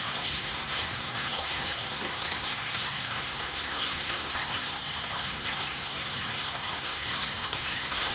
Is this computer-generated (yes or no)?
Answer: yes